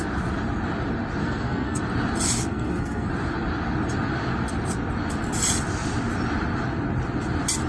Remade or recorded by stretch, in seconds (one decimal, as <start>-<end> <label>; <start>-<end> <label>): 0.0-1.2 recorded; 1.2-1.8 remade; 1.8-2.5 recorded; 2.5-3.1 remade; 3.1-7.7 recorded